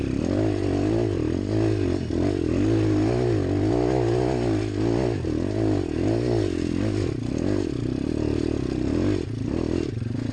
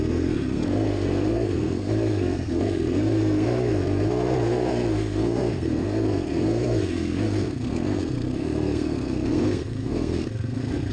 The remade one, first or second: second